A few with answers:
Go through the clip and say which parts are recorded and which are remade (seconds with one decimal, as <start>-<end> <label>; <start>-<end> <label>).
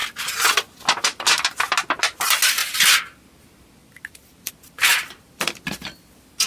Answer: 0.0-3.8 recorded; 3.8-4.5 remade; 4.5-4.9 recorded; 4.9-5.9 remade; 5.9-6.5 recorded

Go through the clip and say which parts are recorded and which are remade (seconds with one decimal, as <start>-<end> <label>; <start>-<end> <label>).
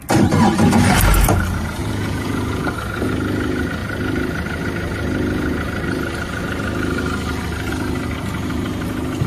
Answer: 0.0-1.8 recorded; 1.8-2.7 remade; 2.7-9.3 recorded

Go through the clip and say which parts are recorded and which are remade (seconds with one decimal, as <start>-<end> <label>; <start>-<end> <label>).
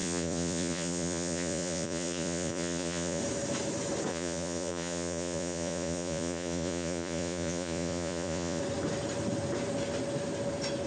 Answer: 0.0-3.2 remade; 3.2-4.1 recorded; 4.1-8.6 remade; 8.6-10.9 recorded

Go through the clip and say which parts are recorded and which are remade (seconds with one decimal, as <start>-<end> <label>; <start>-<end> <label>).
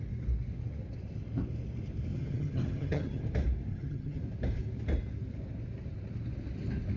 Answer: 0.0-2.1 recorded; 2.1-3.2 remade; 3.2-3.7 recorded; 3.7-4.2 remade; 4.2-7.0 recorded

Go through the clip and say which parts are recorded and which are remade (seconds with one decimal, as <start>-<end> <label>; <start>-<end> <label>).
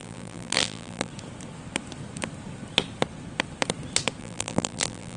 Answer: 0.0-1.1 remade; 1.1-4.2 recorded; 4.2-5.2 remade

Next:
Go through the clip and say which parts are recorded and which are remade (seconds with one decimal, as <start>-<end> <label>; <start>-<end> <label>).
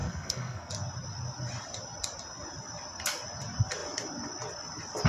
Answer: 0.0-0.7 remade; 0.7-5.1 recorded